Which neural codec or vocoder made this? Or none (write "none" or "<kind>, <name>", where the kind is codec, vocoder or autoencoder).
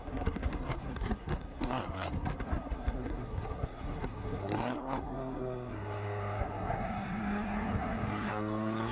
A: codec, SNAC